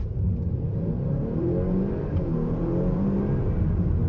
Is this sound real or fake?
fake